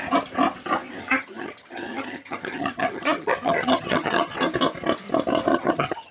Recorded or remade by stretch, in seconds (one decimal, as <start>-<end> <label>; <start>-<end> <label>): 0.0-1.0 recorded; 1.0-4.3 remade; 4.3-5.5 recorded; 5.5-6.1 remade

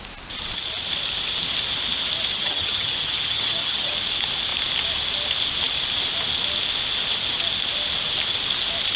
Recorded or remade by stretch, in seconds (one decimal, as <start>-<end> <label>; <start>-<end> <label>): 0.0-2.3 recorded; 2.3-3.9 remade; 3.9-9.0 recorded

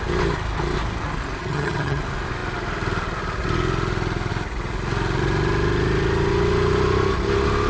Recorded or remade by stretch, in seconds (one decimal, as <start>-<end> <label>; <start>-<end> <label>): 0.0-1.4 recorded; 1.4-2.0 remade; 2.0-7.7 recorded

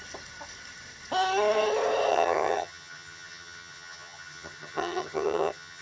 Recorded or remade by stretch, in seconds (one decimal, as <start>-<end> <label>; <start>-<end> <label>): 0.0-2.1 recorded; 2.1-5.8 remade

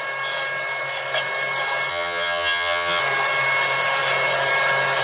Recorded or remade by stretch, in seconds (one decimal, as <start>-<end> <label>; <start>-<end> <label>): 0.0-1.9 recorded; 1.9-3.0 remade; 3.0-5.0 recorded